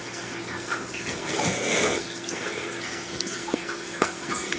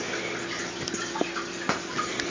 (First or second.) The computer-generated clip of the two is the first